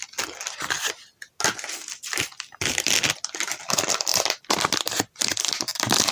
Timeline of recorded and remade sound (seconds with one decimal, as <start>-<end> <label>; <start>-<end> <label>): 0.0-6.1 recorded